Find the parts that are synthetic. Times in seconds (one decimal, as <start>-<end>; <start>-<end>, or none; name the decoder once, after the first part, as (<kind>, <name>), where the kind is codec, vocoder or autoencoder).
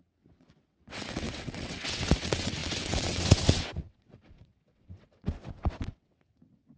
0.0-6.8 (vocoder, WaveNeXt)